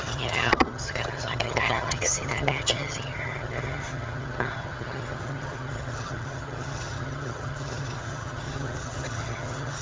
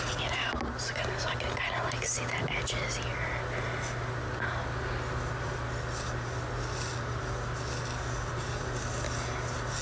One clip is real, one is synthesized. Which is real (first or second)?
second